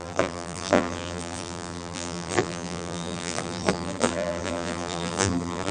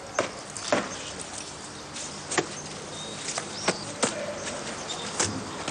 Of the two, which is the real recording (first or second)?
second